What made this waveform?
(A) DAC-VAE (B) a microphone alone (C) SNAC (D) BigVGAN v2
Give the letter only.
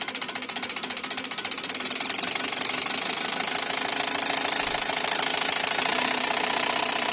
B